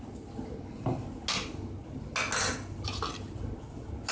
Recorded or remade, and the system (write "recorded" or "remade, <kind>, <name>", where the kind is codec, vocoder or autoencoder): recorded